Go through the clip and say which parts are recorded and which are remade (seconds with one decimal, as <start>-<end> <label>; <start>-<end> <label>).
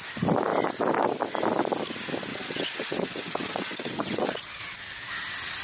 0.0-2.3 recorded; 2.3-5.1 remade; 5.1-5.6 recorded